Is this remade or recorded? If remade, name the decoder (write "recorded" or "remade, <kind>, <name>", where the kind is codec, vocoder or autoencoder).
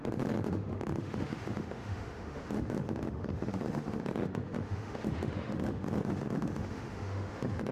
remade, autoencoder, DAC-VAE